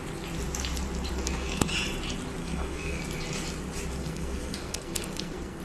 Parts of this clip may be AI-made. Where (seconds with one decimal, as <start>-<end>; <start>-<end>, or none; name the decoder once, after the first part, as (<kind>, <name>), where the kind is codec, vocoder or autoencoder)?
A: 1.1-1.7 (codec, SNAC); 2.4-3.0; 4.0-5.6